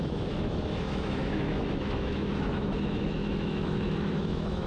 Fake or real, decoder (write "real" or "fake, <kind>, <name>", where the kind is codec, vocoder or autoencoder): fake, autoencoder, DAC-VAE